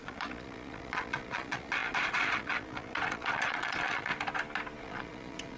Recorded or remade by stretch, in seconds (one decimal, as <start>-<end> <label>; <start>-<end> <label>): 0.0-4.1 remade; 4.1-4.8 recorded; 4.8-5.6 remade